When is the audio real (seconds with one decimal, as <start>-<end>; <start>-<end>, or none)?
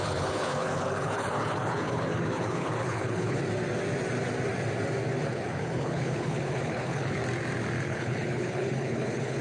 3.4-5.3; 7.2-7.9